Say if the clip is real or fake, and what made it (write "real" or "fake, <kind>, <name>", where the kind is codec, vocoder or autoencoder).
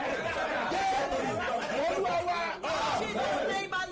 fake, vocoder, BigVGAN v2